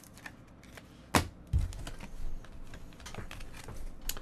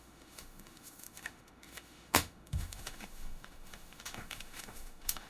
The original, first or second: first